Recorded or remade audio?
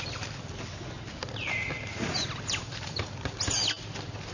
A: recorded